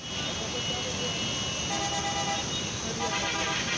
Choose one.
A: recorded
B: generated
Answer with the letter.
A